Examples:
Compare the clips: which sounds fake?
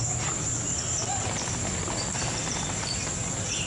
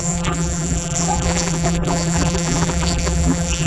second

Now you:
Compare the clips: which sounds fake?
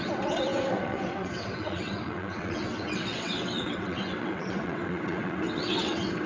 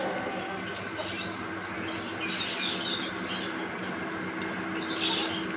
first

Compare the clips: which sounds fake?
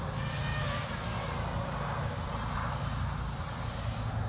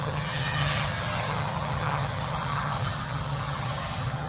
second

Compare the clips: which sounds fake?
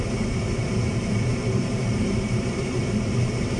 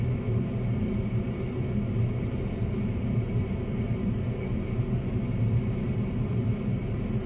first